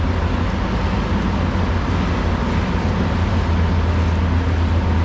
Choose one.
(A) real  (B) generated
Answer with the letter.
A